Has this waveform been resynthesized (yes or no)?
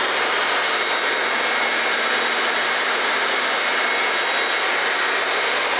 no